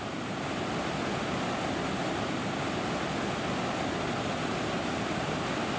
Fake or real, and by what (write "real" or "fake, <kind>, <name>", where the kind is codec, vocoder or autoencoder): real